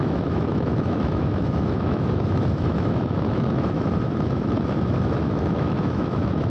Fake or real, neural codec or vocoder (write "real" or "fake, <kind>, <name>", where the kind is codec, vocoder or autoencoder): fake, autoencoder, DAC-VAE